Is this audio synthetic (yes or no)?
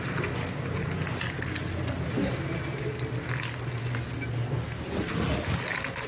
no